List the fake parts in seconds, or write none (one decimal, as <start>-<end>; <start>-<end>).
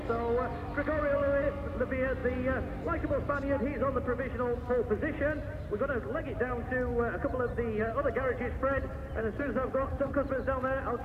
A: 9.0-10.3